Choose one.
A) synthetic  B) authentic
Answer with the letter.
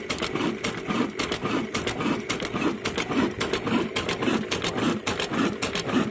B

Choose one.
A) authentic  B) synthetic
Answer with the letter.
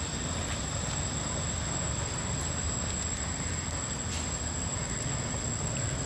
A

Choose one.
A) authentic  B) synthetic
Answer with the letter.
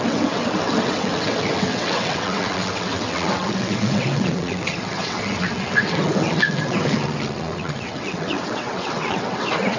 B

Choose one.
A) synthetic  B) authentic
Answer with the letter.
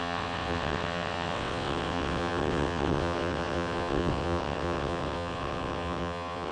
A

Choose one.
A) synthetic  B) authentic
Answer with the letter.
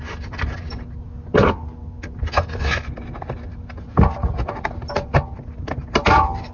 B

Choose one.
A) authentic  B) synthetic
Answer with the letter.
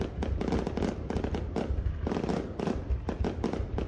A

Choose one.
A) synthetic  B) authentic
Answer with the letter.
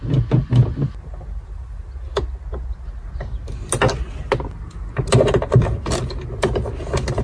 B